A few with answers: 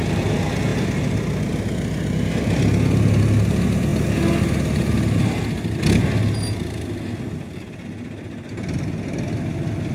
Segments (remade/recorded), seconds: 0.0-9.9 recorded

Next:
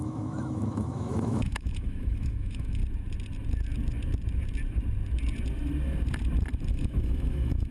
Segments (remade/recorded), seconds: 0.0-2.8 remade; 2.8-6.7 recorded; 6.7-7.7 remade

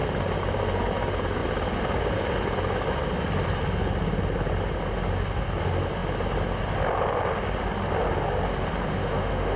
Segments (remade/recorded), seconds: 0.0-8.9 recorded; 8.9-9.6 remade